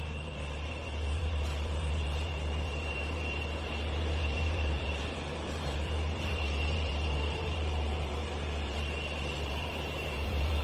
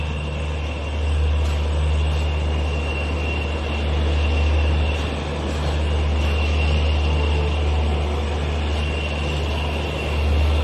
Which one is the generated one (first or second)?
first